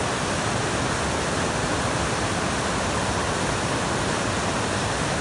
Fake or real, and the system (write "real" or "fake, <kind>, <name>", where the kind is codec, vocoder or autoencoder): real